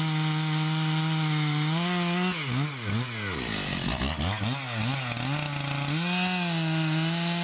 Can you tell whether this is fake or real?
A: real